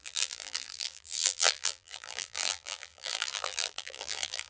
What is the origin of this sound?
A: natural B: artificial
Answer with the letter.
B